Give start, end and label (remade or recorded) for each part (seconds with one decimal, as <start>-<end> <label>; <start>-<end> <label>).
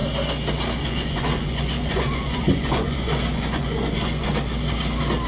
0.0-0.8 recorded; 0.8-4.3 remade; 4.3-5.3 recorded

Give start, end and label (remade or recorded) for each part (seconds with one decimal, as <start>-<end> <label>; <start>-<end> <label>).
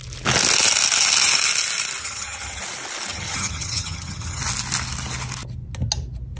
0.0-2.0 recorded; 2.0-2.6 remade; 2.6-3.1 recorded; 3.1-4.4 remade; 4.4-6.4 recorded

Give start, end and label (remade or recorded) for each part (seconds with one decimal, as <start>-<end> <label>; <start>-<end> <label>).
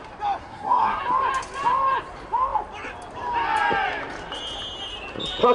0.0-0.4 recorded; 0.4-1.0 remade; 1.0-5.5 recorded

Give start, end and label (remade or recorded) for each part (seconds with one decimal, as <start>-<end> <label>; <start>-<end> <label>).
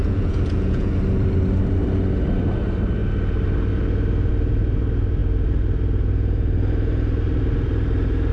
0.0-0.9 remade; 0.9-8.3 recorded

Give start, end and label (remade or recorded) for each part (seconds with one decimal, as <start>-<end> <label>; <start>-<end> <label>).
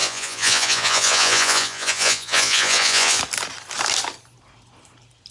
0.0-3.2 remade; 3.2-5.3 recorded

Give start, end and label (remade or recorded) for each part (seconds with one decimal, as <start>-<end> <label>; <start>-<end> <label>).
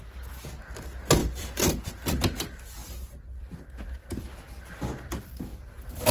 0.0-1.2 recorded; 1.2-1.9 remade; 1.9-5.5 recorded; 5.5-6.1 remade